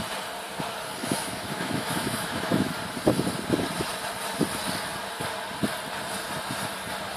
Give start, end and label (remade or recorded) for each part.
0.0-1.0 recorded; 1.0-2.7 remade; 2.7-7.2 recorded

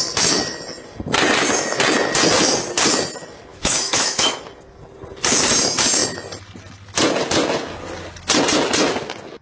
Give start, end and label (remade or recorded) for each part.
0.0-3.5 recorded; 3.5-4.4 remade; 4.4-9.4 recorded